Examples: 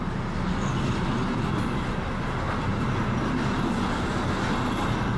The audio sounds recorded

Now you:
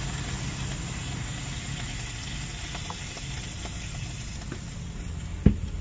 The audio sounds recorded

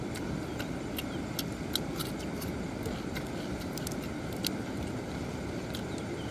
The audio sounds recorded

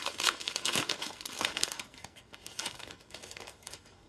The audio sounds remade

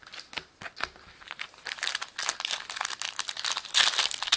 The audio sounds recorded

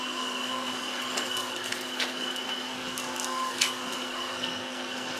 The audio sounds remade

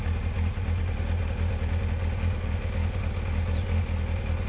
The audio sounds recorded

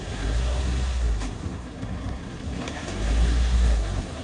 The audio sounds remade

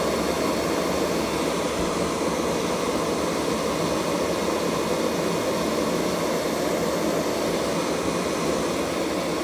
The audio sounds recorded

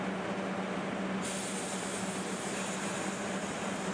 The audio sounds recorded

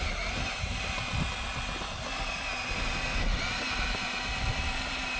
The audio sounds recorded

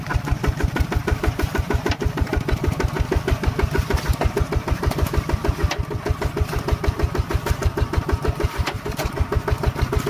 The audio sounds remade